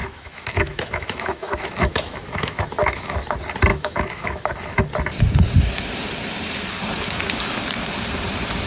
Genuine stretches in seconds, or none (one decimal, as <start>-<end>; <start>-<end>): 3.3-3.7; 4.9-8.7